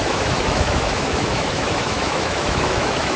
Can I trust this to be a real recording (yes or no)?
no